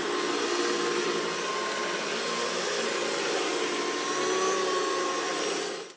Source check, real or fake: real